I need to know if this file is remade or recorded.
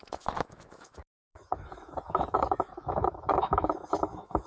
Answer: remade